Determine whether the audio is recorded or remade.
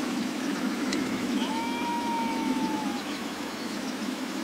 remade